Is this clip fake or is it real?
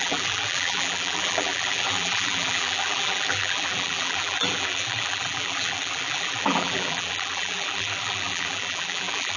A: fake